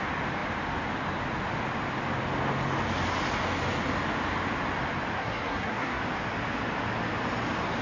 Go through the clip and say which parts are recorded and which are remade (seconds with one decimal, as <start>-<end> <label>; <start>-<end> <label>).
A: 0.0-5.2 recorded; 5.2-6.0 remade; 6.0-7.8 recorded